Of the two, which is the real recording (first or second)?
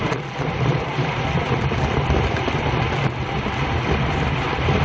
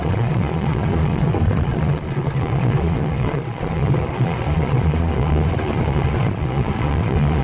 first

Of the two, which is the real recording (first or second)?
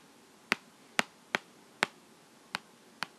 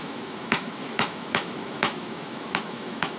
first